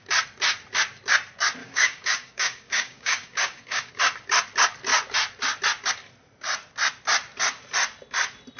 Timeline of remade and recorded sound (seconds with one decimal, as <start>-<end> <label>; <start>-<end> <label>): 0.0-1.6 recorded; 1.6-3.9 remade; 3.9-8.6 recorded